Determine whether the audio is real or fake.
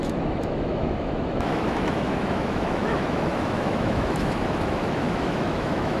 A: fake